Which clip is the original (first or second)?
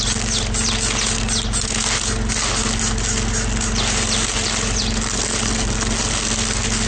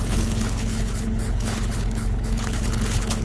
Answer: first